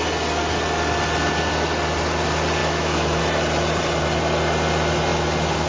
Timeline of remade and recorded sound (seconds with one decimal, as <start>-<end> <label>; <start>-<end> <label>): 0.0-2.6 recorded; 2.6-3.2 remade; 3.2-5.7 recorded